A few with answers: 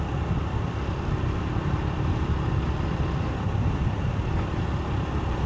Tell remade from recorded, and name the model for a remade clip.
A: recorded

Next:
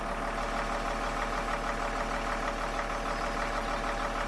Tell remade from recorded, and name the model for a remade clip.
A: recorded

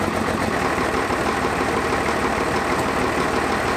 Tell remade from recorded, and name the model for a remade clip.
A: recorded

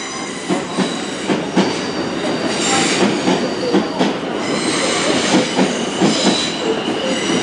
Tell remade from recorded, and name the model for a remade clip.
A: recorded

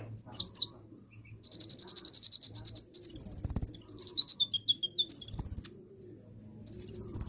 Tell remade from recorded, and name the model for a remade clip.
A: recorded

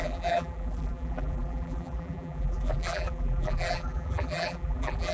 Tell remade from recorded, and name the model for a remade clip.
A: remade, vocoder, BigVGAN v2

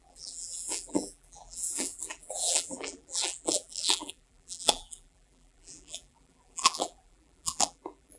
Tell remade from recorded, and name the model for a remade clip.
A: remade, vocoder, BigVGAN v2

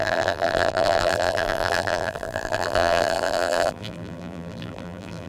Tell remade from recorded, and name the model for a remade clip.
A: remade, vocoder, BigVGAN v2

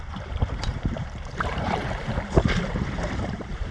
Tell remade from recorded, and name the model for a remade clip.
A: remade, vocoder, BigVGAN v2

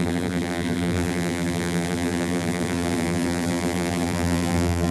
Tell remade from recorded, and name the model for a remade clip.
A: remade, vocoder, BigVGAN v2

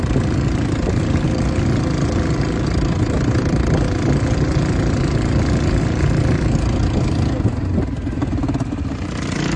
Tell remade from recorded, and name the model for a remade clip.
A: recorded